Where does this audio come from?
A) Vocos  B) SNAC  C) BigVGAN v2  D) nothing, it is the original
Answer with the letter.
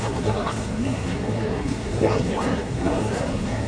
B